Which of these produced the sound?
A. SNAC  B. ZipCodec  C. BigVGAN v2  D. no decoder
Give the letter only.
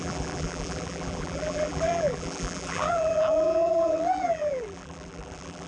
C